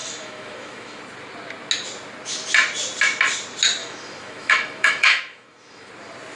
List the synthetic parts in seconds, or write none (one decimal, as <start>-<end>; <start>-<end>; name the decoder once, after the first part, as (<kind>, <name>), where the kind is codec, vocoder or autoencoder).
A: 0.0-1.0 (autoencoder, DAC-VAE); 3.8-5.9